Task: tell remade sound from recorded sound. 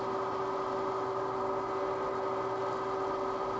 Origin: recorded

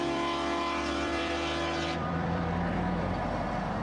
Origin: remade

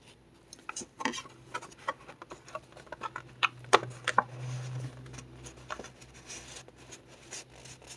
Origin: recorded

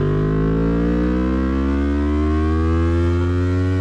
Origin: recorded